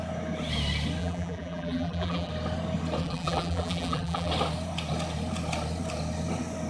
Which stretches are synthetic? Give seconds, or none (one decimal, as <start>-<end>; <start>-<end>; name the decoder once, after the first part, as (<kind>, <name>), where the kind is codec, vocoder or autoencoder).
1.0-2.3 (vocoder, BigVGAN v2); 3.0-4.3